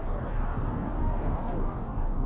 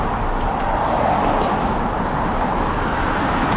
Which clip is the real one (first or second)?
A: second